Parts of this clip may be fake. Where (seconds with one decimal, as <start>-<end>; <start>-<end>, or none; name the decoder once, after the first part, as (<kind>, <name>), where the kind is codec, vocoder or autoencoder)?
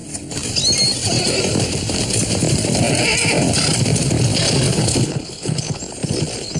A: 4.7-5.8 (codec, HILCodec)